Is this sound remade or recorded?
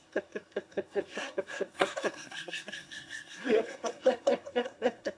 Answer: remade